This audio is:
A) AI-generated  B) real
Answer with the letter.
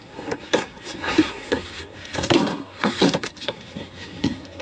A